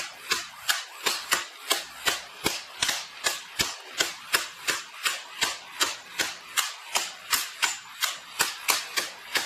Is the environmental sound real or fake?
real